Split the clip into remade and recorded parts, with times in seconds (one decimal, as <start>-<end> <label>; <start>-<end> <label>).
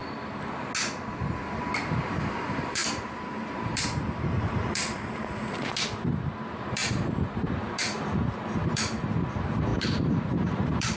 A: 0.0-1.1 recorded; 1.1-11.0 remade